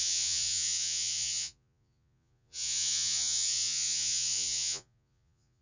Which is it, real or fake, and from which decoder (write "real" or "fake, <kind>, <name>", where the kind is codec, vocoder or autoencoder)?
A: fake, vocoder, Vocos